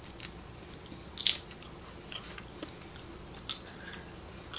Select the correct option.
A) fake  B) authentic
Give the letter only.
B